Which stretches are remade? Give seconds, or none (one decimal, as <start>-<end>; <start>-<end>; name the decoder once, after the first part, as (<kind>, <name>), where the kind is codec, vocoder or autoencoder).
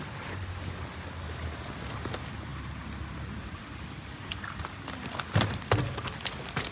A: none